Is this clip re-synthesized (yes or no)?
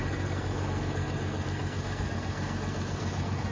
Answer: yes